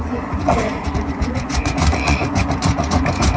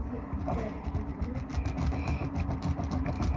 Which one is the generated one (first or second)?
first